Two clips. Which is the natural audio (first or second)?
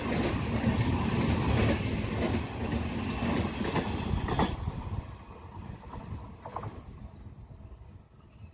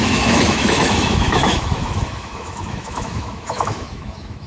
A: first